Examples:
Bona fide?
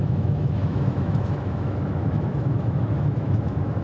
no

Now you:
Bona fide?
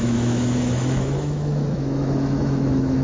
no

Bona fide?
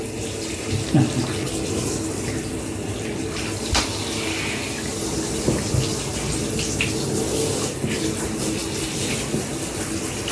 yes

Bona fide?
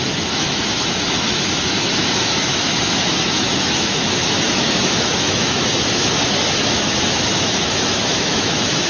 no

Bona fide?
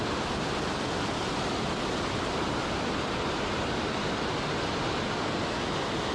yes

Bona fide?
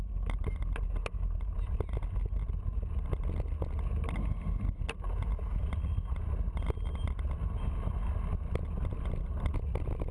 yes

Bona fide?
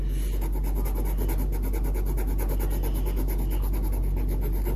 yes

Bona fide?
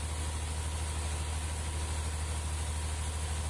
yes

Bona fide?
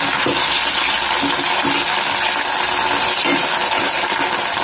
yes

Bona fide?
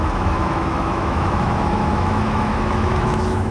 no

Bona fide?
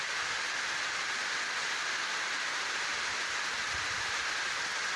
yes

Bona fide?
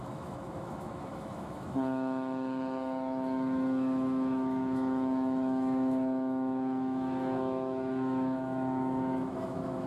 no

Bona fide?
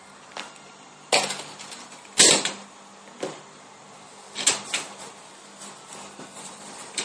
yes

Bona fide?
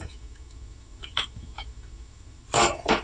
no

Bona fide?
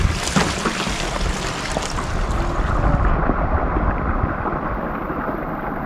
yes